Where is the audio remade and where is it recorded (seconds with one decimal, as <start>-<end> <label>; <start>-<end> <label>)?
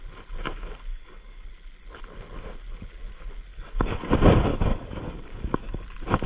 0.0-0.9 recorded; 0.9-1.5 remade; 1.5-3.5 recorded; 3.5-4.1 remade; 4.1-4.5 recorded; 4.5-5.8 remade; 5.8-6.3 recorded